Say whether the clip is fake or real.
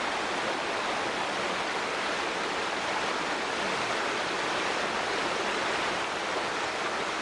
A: real